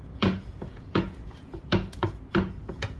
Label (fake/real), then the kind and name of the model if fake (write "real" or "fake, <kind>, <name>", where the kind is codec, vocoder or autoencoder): fake, vocoder, Vocos